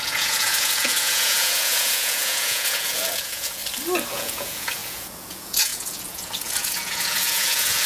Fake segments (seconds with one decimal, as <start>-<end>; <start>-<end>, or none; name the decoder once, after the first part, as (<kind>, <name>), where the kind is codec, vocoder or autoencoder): 0.0-3.6 (vocoder, Vocos); 4.1-7.9